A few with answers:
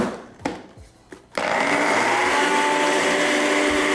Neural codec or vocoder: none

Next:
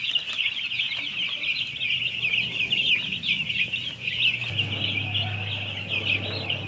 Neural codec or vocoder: none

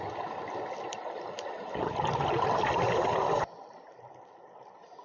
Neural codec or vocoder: none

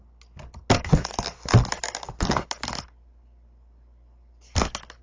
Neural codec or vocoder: none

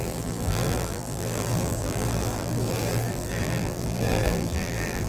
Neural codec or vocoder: vocoder, BigVGAN v2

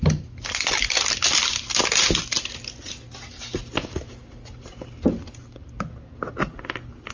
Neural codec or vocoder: none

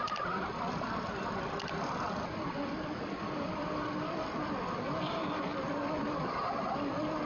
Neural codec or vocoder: vocoder, BigVGAN v2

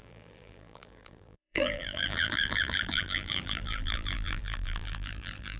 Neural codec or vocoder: vocoder, BigVGAN v2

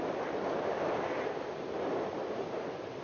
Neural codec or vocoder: none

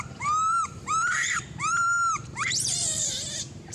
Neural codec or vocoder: vocoder, BigVGAN v2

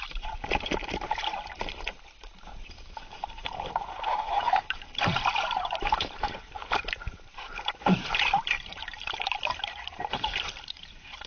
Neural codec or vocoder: vocoder, BigVGAN v2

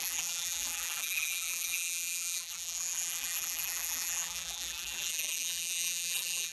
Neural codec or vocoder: vocoder, BigVGAN v2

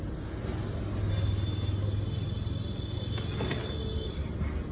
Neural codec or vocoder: none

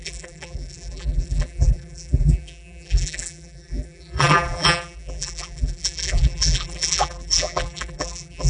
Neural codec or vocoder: vocoder, BigVGAN v2